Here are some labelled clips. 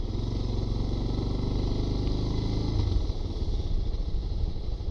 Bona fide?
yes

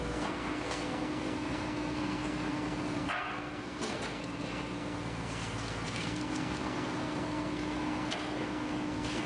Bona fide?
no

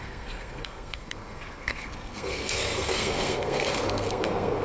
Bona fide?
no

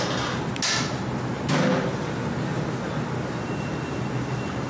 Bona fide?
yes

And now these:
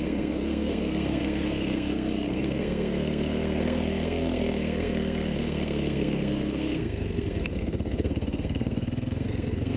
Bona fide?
no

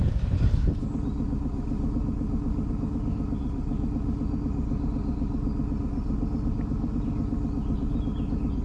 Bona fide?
yes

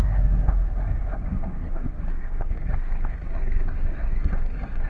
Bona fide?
no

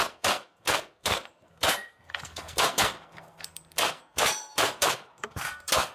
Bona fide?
no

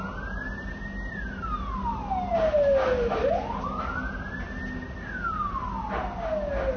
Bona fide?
yes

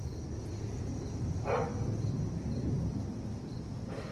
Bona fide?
yes